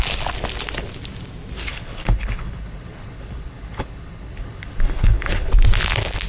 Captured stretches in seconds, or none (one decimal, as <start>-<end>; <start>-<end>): 0.0-1.7; 5.5-6.3